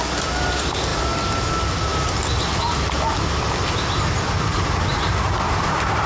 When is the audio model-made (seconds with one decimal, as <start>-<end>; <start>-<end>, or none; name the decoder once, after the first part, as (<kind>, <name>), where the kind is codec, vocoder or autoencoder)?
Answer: 4.9-6.1 (vocoder, BigVGAN v2)